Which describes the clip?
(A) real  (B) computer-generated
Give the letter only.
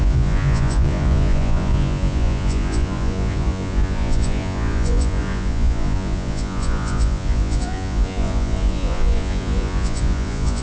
B